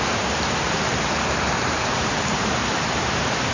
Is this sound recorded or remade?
remade